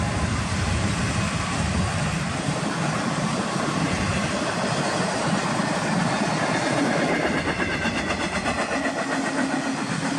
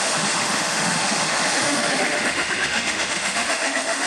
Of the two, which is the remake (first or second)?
second